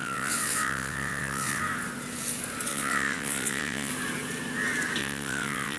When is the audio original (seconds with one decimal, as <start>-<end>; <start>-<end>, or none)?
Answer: 1.6-2.7; 3.9-5.0